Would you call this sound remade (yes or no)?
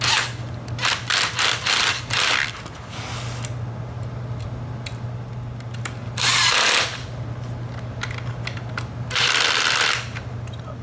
no